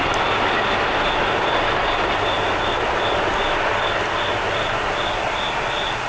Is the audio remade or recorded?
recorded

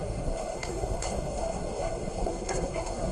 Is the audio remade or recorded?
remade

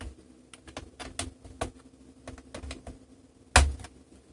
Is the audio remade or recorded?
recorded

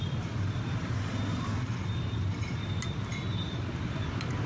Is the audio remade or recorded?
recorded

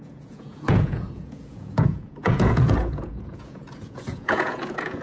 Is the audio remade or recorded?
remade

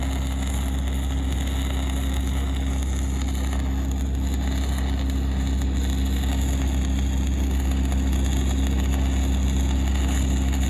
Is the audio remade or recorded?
recorded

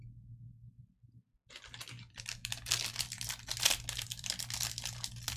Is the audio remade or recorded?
recorded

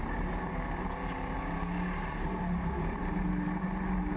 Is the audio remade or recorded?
recorded